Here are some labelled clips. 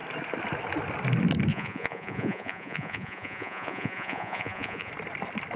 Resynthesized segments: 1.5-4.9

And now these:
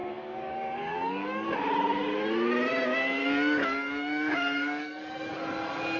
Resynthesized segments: 0.0-1.5; 3.2-5.3